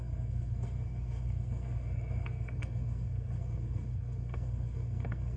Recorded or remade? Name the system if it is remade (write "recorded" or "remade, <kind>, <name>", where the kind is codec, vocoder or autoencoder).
remade, codec, SNAC